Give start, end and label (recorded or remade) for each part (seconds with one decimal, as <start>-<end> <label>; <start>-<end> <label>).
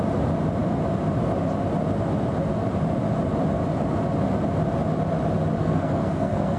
0.0-5.6 recorded; 5.6-6.6 remade